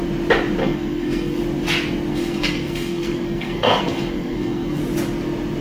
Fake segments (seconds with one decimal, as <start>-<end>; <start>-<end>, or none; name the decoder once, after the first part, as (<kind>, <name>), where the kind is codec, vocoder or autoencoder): 0.6-1.4 (codec, SNAC); 2.1-4.8